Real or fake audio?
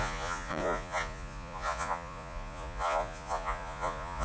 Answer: fake